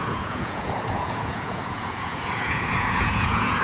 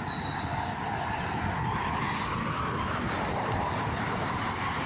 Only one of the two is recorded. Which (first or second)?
second